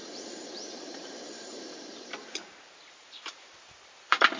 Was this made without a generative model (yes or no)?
no